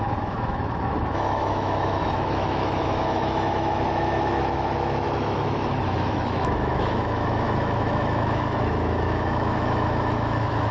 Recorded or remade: remade